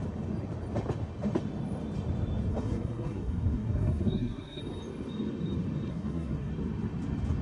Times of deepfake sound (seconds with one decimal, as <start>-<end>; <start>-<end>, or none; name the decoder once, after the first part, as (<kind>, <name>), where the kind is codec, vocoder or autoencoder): 2.5-4.6 (codec, SNAC); 5.9-6.5